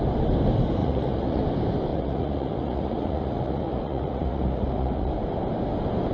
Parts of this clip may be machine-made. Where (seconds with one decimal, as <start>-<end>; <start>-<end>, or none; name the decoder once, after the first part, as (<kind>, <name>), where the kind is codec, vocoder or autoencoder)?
0.8-1.4 (vocoder, Vocos); 1.9-5.1